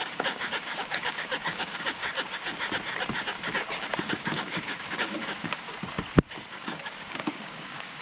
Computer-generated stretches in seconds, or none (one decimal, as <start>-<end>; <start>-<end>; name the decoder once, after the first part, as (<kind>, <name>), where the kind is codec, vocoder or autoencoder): 0.0-2.0 (codec, DAC); 4.0-5.7; 6.5-8.0